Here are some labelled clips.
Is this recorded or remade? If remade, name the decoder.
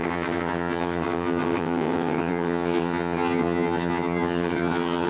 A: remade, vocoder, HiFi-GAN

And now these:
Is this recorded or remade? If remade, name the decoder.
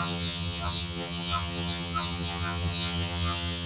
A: remade, vocoder, HiFi-GAN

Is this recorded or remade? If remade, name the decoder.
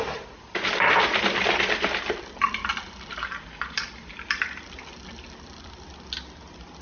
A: recorded